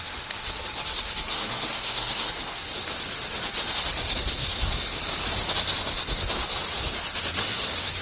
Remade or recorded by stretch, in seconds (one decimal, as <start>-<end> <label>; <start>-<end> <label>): 0.0-1.3 recorded; 1.3-2.3 remade; 2.3-8.0 recorded